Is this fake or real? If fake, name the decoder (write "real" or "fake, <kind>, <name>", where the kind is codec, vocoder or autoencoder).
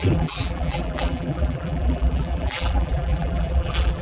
fake, vocoder, BigVGAN v2